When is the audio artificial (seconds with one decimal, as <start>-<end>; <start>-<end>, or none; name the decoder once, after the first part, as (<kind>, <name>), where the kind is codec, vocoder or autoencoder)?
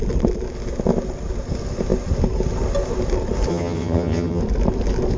3.5-4.4 (vocoder, HiFi-GAN)